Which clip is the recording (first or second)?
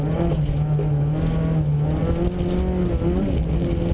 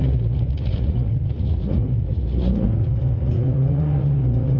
first